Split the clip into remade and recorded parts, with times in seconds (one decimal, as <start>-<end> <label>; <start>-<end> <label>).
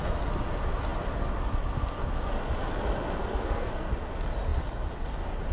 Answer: 0.0-3.2 recorded; 3.2-3.9 remade; 3.9-5.5 recorded